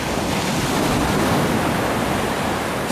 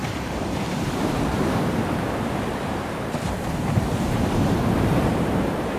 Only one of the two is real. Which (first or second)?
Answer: first